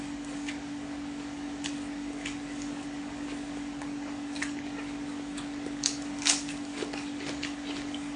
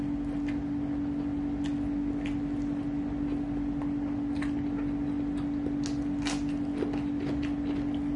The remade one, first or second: first